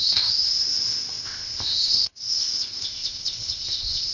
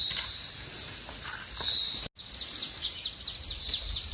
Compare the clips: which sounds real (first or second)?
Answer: second